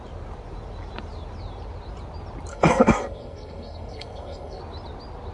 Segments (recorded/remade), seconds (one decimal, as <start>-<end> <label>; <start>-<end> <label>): 0.0-2.5 recorded; 2.5-4.6 remade; 4.6-5.3 recorded